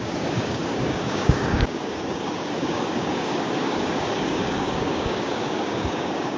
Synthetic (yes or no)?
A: yes